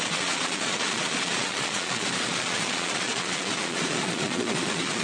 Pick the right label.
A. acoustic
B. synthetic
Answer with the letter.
B